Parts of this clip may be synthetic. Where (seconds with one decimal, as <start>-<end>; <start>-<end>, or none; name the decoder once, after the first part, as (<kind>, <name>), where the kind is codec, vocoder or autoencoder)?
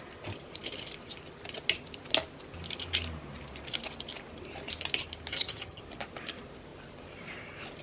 5.3-5.8 (vocoder, HiFi-GAN)